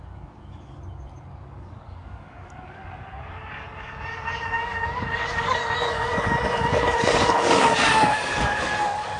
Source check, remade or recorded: remade